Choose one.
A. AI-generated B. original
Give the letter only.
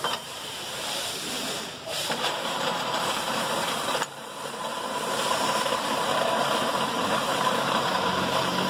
A